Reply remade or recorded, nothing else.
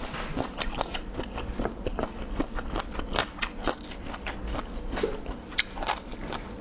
recorded